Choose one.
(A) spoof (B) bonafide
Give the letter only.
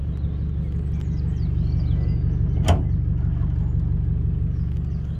B